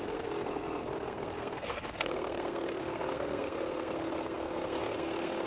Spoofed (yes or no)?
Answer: yes